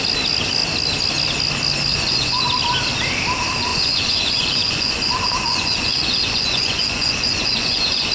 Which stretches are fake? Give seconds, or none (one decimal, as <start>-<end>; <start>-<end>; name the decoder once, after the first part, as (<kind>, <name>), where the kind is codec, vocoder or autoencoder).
1.9-2.4 (vocoder, Vocos); 3.7-8.1